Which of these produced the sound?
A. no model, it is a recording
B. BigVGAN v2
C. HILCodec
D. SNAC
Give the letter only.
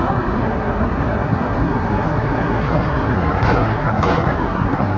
D